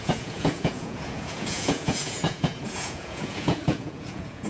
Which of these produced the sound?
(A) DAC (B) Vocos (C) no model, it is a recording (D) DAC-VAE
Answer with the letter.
B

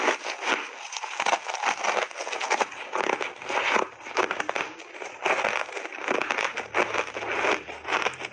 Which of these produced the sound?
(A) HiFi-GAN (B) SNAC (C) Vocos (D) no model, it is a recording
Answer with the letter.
D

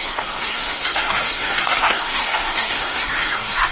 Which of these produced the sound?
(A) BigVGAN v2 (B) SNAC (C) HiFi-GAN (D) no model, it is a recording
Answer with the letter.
B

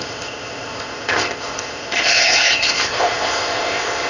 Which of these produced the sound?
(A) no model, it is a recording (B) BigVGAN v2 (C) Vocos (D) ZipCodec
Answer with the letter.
D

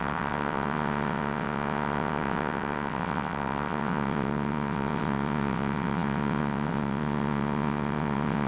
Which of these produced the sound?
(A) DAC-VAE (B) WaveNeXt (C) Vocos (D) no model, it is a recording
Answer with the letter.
B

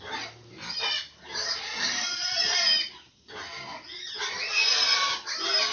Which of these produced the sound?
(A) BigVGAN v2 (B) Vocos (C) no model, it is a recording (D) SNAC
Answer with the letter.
C